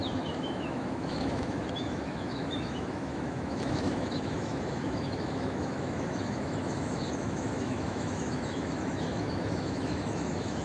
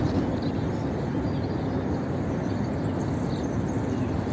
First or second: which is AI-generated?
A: first